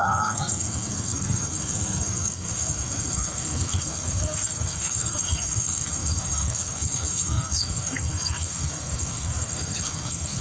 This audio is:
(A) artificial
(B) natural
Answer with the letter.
A